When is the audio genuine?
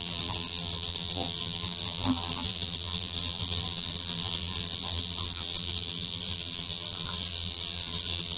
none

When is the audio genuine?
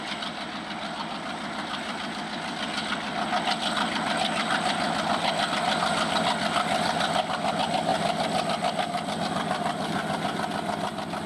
0.0-11.3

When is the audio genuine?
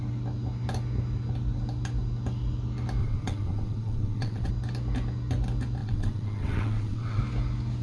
0.0-3.0; 4.5-5.8; 7.2-7.8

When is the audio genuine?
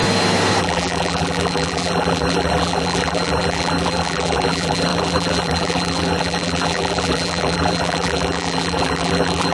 0.0-0.6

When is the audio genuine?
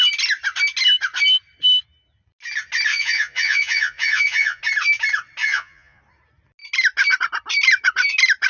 0.0-2.9; 4.6-5.4; 6.0-8.5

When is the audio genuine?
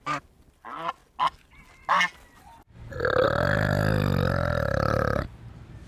0.0-5.9